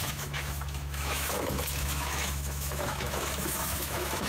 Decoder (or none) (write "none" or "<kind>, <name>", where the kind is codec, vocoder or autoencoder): autoencoder, DAC-VAE